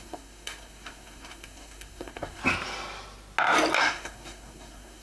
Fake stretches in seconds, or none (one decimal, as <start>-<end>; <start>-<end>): 0.0-2.4; 3.8-5.0